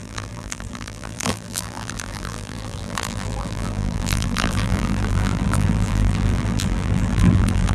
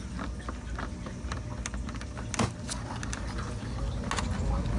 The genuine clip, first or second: second